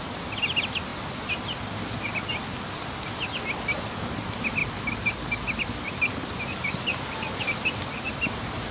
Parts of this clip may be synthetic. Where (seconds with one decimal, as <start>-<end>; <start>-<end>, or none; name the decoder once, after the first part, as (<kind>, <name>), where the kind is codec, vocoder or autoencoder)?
none